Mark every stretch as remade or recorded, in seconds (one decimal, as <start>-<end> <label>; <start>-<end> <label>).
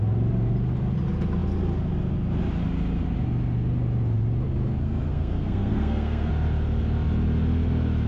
0.0-4.8 recorded; 4.8-6.3 remade; 6.3-8.1 recorded